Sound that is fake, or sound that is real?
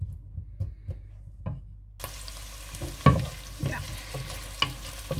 real